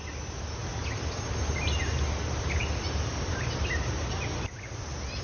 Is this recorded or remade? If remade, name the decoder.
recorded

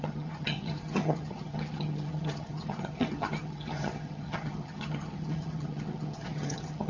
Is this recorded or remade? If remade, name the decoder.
remade, vocoder, HiFi-GAN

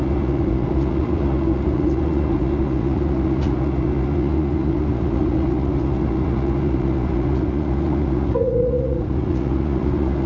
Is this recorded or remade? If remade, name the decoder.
remade, vocoder, Vocos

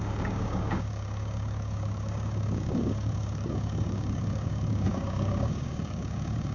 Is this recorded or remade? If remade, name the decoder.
remade, codec, DAC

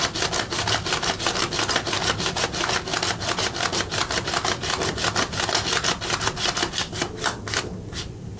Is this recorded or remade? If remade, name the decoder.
recorded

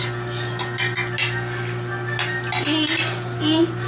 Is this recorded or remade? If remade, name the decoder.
recorded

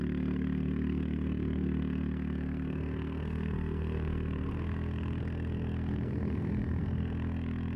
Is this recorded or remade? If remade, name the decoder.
remade, codec, SNAC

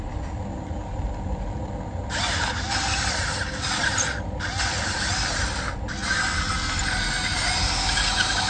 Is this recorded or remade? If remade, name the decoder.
recorded